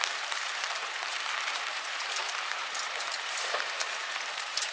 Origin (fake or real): fake